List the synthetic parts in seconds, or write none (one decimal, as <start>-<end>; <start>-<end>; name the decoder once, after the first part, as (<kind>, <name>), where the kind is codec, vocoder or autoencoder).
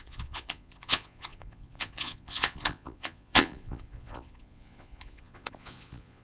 0.0-6.2 (vocoder, Vocos)